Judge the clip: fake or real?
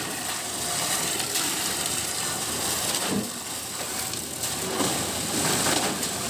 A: real